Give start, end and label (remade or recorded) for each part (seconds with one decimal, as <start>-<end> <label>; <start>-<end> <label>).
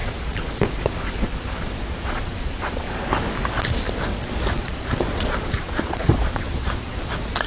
0.0-2.9 remade; 2.9-4.1 recorded; 4.1-7.1 remade; 7.1-7.5 recorded